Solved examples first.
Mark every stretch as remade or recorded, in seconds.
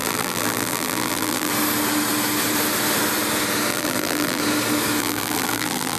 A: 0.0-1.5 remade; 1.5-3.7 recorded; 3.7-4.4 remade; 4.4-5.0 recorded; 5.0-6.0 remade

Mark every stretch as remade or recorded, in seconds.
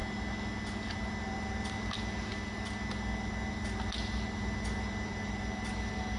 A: 0.0-6.2 recorded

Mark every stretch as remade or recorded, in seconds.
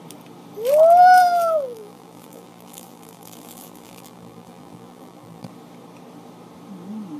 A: 0.0-1.2 recorded; 1.2-5.5 remade; 5.5-7.2 recorded